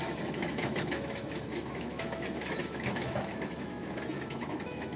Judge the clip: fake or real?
fake